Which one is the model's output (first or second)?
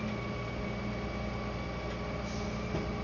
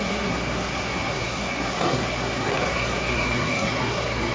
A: second